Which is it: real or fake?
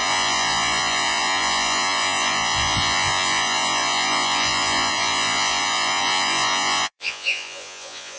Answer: fake